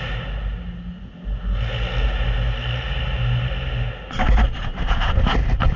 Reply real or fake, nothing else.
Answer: real